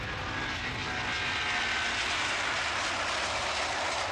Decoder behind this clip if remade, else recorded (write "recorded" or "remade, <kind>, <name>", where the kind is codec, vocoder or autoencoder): recorded